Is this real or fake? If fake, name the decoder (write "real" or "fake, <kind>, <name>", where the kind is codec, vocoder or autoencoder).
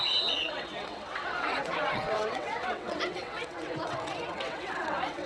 fake, vocoder, WaveNeXt